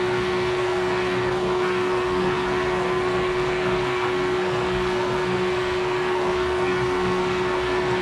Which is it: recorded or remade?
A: remade